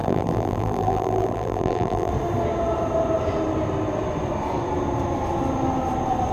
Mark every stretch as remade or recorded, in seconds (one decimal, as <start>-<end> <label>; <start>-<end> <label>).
0.0-2.1 remade; 2.1-6.3 recorded